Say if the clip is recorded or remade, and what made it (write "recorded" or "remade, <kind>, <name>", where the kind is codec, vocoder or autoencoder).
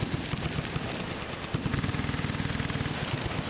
recorded